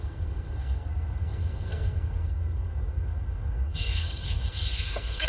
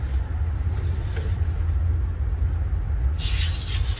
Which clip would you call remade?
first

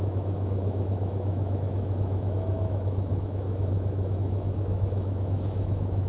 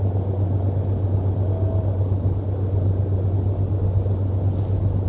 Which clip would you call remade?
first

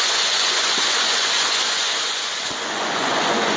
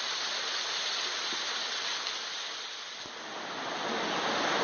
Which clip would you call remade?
first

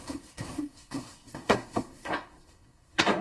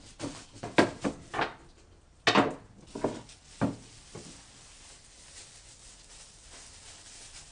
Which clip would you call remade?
first